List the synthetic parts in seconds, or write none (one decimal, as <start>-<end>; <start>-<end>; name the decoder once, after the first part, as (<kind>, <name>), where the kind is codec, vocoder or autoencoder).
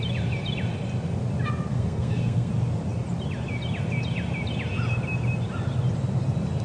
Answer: 1.7-2.5 (codec, SNAC)